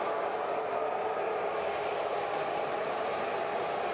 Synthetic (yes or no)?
no